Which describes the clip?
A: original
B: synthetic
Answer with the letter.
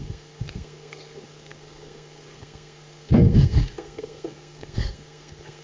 B